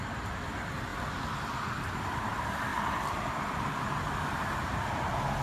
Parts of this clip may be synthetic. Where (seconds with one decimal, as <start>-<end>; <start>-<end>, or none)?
none

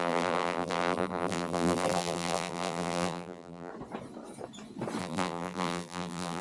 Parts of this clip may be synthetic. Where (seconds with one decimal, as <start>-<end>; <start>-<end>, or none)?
0.0-3.7; 5.0-6.4

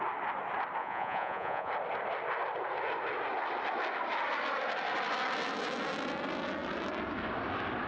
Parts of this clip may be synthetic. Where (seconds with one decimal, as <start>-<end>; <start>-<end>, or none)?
0.8-1.7

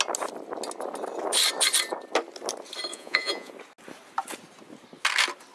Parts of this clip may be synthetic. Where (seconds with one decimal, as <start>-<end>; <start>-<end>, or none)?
2.9-3.5